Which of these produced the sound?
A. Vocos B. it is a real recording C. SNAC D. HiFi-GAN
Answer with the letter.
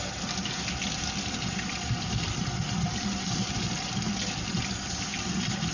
B